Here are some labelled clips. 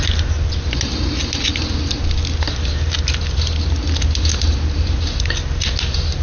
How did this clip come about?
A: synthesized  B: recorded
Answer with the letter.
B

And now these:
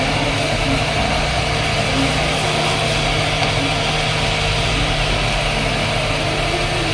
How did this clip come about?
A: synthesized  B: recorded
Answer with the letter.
B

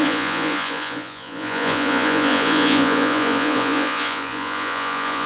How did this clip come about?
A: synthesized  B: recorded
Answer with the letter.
A